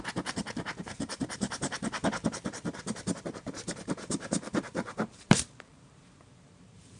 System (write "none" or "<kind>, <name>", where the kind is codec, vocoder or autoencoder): vocoder, BigVGAN v2